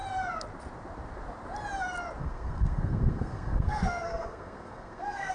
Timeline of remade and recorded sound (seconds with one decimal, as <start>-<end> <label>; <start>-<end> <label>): 0.0-2.2 recorded; 2.2-5.3 remade